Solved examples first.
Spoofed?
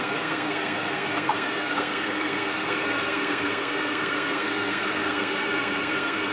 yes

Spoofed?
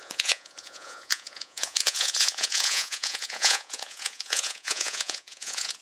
yes